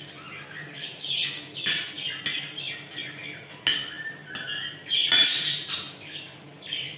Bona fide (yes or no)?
yes